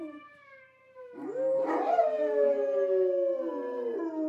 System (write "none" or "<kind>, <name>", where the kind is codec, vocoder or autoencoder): none